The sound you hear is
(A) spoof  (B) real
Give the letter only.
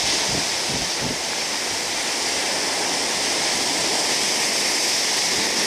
B